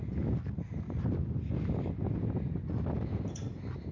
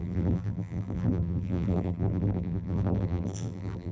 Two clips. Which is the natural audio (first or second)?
first